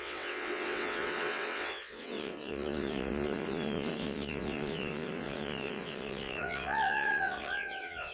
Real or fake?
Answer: fake